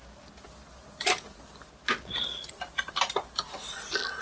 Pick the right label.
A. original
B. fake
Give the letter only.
A